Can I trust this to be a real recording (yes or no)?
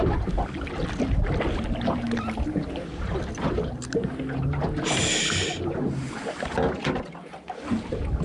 yes